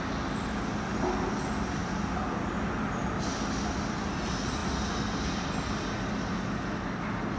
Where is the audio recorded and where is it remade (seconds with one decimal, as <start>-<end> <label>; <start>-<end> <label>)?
0.0-7.4 recorded

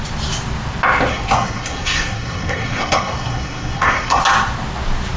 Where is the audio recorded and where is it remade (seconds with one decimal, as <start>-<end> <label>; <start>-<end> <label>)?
0.0-1.1 recorded; 1.1-4.2 remade; 4.2-5.2 recorded